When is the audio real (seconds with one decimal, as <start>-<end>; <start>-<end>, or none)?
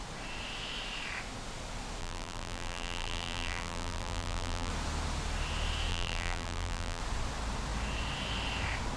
0.0-2.0; 4.7-5.9; 7.0-9.0